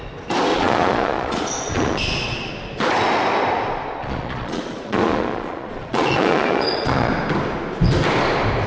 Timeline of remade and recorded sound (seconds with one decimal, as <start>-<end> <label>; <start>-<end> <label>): 0.0-0.5 recorded; 0.5-2.5 remade; 2.5-4.0 recorded; 4.0-7.1 remade; 7.1-8.7 recorded